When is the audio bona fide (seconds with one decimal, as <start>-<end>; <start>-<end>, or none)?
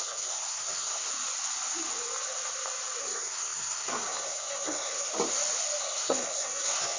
1.1-3.0; 5.1-5.8